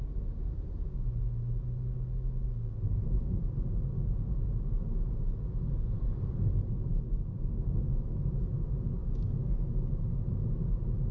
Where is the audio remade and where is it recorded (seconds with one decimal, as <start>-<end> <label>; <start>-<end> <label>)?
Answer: 0.0-11.1 recorded